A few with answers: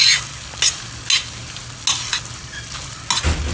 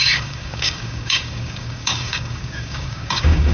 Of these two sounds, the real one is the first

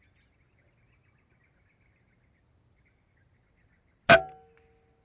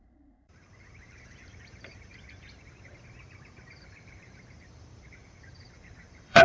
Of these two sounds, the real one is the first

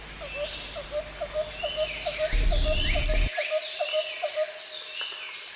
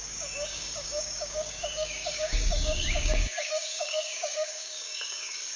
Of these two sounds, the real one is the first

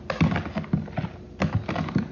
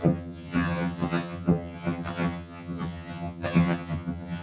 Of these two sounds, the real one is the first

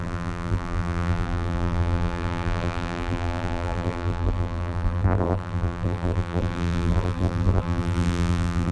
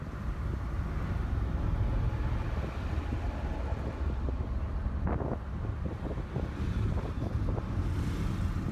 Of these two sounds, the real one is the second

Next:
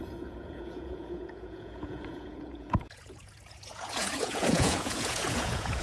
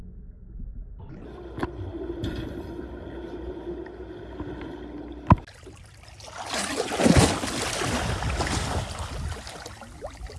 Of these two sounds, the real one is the second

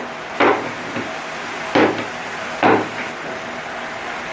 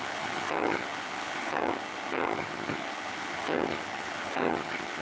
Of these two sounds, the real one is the first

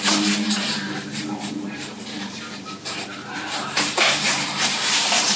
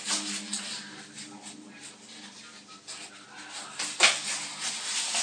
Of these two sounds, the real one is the second